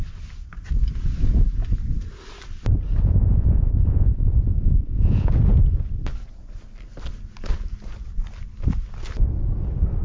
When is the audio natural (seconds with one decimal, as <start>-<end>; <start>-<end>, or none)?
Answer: 0.0-3.0; 5.3-10.0